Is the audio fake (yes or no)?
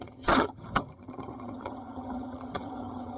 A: yes